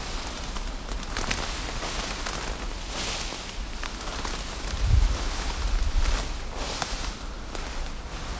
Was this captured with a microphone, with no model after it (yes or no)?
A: yes